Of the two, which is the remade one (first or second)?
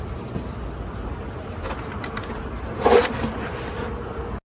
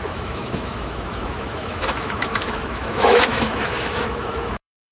second